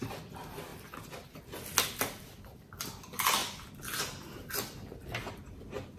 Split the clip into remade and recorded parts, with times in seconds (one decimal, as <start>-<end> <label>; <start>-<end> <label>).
0.0-0.7 remade; 0.7-2.0 recorded; 2.0-3.4 remade; 3.4-5.3 recorded; 5.3-6.0 remade